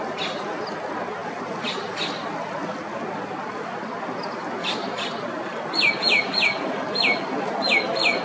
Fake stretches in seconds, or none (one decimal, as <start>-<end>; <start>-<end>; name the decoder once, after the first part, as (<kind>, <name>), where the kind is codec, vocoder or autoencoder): none